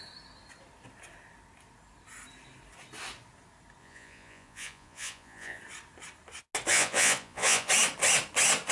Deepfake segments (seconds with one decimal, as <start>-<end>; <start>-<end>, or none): 3.8-5.6; 6.7-7.7